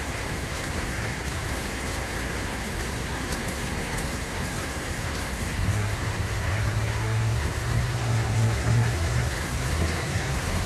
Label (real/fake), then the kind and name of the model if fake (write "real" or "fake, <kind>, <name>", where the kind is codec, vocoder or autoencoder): fake, codec, SNAC